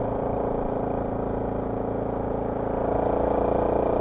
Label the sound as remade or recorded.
recorded